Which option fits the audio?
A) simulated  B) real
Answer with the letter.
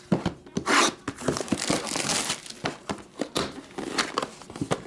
B